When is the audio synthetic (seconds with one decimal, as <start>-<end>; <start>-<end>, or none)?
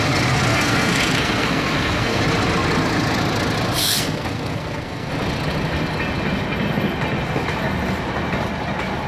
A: 0.5-2.2; 3.8-5.1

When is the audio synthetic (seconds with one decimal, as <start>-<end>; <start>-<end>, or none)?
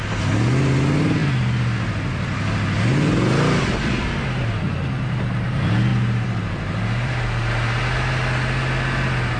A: 5.9-7.8